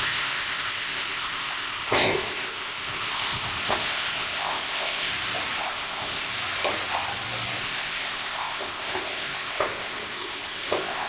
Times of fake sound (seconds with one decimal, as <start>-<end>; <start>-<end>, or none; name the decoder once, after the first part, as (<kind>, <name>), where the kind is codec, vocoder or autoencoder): 0.0-5.1 (codec, ZipCodec); 5.6-6.3; 7.6-11.1